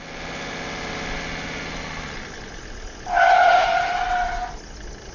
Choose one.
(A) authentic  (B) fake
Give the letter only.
A